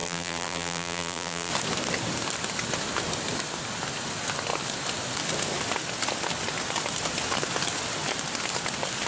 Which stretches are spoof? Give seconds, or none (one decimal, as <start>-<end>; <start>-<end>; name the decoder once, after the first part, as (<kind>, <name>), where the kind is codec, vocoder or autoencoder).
0.0-1.5 (vocoder, BigVGAN v2)